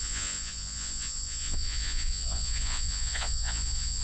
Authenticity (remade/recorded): remade